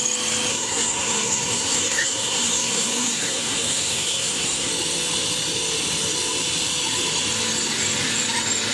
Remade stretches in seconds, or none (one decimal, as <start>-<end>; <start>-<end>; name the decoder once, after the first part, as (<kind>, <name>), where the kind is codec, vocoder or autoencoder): 0.5-4.7 (codec, SNAC)